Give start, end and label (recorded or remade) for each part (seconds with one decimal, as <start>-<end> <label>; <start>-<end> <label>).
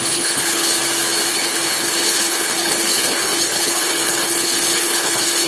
0.0-0.8 remade; 0.8-1.3 recorded; 1.3-5.5 remade